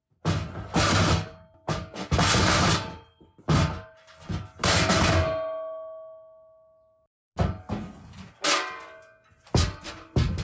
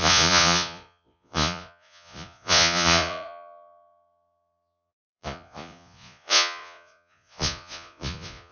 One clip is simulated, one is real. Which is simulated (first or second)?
second